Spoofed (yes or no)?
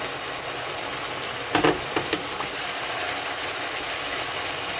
no